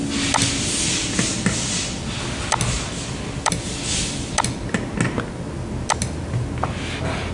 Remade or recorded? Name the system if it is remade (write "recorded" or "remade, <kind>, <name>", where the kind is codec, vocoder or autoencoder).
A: recorded